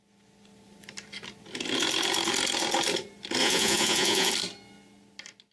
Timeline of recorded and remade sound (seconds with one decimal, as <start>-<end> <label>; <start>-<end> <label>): 0.0-3.4 recorded; 3.4-4.3 remade; 4.3-5.5 recorded